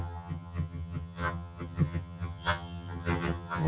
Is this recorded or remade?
remade